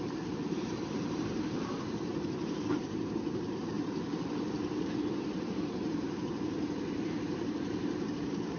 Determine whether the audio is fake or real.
fake